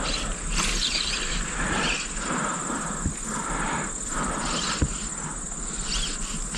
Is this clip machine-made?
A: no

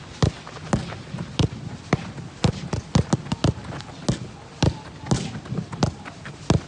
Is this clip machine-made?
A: no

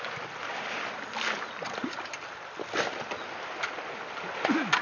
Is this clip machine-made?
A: no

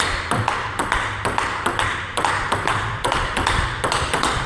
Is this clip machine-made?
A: no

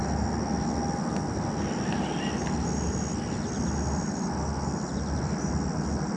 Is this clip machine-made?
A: no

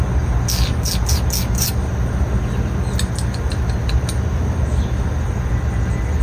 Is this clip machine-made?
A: no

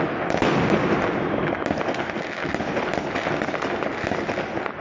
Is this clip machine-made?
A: no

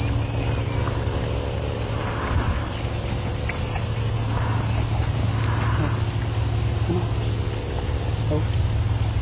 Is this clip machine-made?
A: no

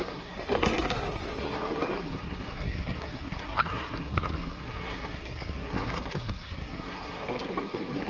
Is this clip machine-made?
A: yes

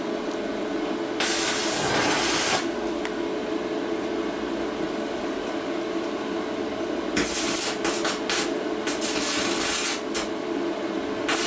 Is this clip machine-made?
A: no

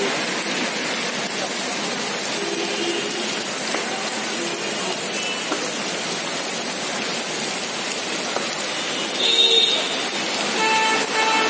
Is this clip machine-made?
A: no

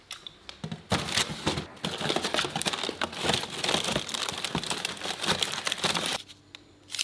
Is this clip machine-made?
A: no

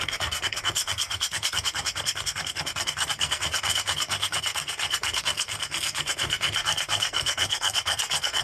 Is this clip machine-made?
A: yes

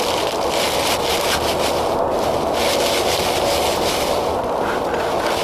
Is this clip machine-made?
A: no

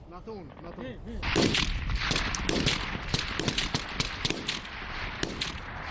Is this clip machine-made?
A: no